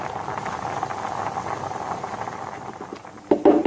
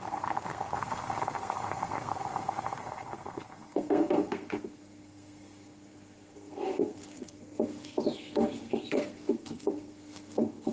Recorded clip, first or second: first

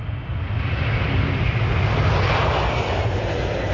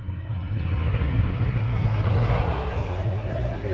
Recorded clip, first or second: first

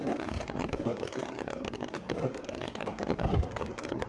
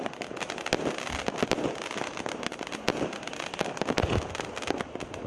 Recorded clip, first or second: second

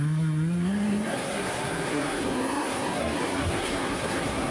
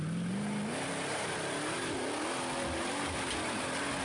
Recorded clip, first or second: second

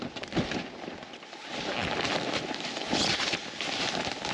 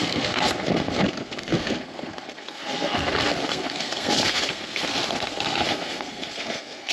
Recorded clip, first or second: first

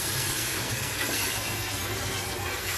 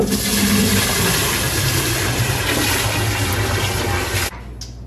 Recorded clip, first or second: second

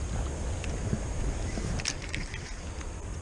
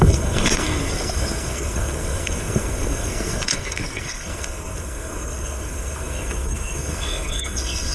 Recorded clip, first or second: first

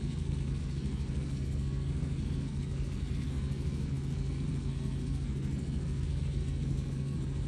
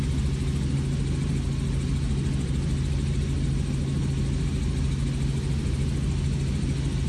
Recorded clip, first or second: second